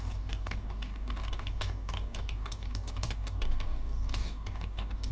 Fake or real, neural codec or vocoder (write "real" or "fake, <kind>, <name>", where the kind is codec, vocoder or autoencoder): fake, codec, DAC